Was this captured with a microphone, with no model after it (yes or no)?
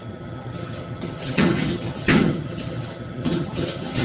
no